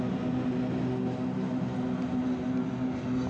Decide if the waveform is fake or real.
real